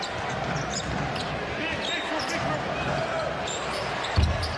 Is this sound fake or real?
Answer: real